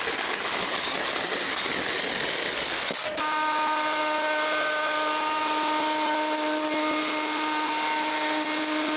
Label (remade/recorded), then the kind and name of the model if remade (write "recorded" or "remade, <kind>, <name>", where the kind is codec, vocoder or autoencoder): recorded